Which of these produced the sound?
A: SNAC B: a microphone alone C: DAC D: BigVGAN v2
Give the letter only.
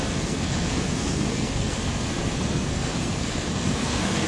A